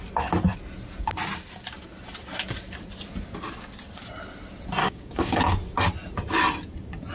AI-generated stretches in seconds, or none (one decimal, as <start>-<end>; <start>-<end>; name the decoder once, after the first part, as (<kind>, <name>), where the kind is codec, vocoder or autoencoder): 4.8-5.4 (codec, DAC)